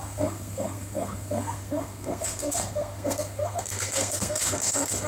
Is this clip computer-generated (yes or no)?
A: yes